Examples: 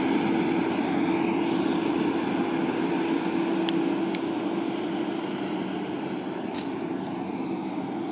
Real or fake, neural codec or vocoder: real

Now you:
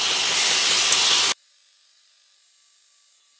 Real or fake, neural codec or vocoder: real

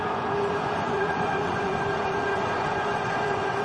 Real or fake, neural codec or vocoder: fake, vocoder, Vocos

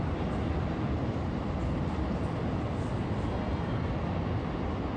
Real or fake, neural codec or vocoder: real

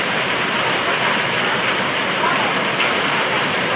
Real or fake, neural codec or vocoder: real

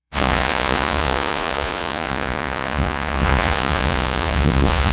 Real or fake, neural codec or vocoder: fake, vocoder, Vocos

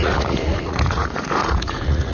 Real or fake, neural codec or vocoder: fake, vocoder, Vocos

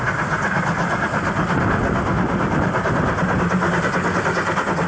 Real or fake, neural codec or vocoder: real